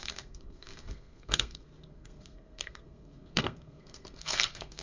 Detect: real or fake fake